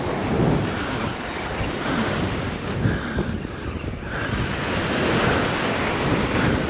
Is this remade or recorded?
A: recorded